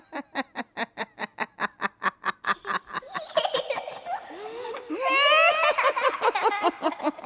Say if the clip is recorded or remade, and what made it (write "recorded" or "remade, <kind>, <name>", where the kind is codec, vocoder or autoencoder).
recorded